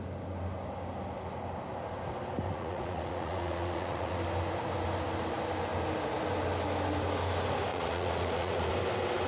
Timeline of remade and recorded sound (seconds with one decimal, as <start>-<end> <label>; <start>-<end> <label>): 0.0-2.5 recorded; 2.5-4.2 remade; 4.2-7.7 recorded; 7.7-8.7 remade; 8.7-9.3 recorded